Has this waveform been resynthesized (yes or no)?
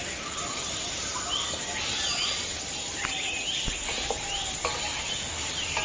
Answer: no